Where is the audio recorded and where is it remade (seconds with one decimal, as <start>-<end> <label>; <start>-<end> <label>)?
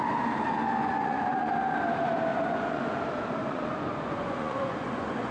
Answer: 0.0-0.8 recorded; 0.8-1.5 remade; 1.5-2.3 recorded; 2.3-3.0 remade; 3.0-3.4 recorded; 3.4-5.3 remade